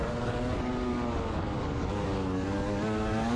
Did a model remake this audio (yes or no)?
yes